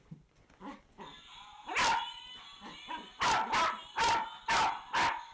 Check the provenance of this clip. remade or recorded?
recorded